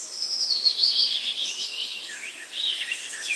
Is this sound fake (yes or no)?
yes